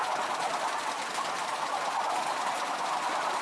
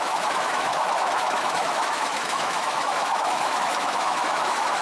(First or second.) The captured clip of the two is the first